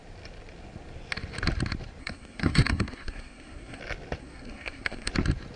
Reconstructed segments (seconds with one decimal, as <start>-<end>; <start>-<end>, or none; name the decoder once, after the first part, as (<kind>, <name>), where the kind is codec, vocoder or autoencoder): 2.0-3.8 (codec, SNAC); 4.2-5.1